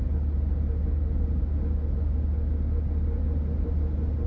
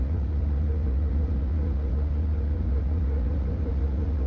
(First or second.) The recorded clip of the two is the first